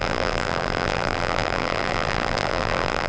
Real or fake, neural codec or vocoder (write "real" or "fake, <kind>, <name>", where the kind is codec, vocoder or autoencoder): fake, vocoder, BigVGAN v2